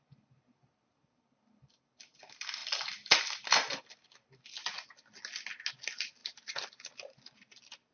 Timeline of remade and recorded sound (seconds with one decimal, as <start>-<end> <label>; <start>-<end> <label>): 0.0-7.9 recorded